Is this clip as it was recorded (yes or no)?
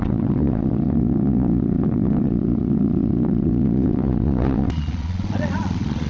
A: no